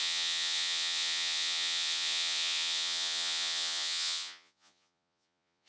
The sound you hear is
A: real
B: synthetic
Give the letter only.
B